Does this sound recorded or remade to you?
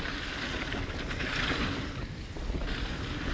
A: recorded